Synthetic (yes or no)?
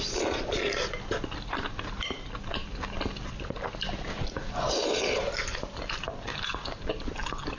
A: no